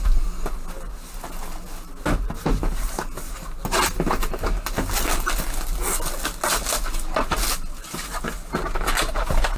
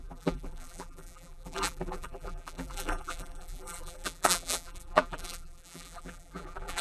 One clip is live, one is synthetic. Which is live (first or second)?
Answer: first